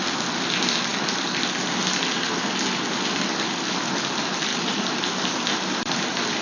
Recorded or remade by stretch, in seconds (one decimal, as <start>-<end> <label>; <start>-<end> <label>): 0.0-4.5 recorded; 4.5-6.0 remade; 6.0-6.4 recorded